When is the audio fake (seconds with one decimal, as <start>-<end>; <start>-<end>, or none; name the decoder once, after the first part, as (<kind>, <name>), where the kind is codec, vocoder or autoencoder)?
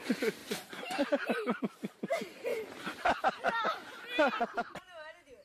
0.4-1.6 (vocoder, BigVGAN v2); 2.5-4.0